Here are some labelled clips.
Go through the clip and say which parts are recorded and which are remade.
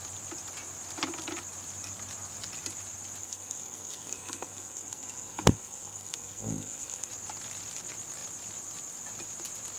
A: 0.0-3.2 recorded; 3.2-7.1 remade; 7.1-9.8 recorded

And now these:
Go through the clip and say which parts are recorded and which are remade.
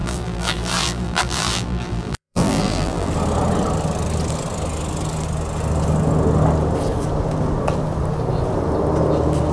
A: 0.0-3.1 remade; 3.1-9.5 recorded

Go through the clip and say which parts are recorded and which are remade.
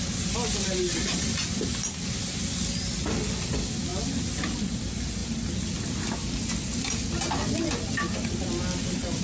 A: 0.0-9.2 recorded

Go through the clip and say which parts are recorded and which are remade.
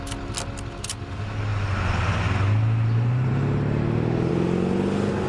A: 0.0-5.3 recorded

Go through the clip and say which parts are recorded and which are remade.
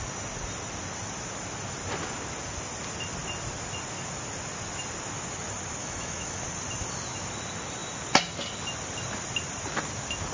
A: 0.0-5.8 recorded; 5.8-6.4 remade; 6.4-10.3 recorded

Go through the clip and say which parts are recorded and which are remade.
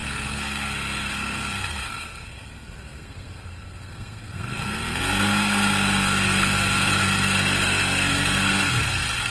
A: 0.0-9.3 remade